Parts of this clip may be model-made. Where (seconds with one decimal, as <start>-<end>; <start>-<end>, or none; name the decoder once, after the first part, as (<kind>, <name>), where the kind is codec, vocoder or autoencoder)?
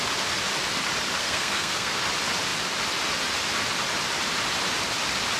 1.2-2.0 (codec, SNAC)